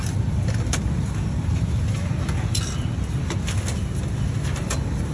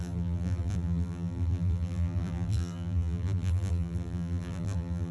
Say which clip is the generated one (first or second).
second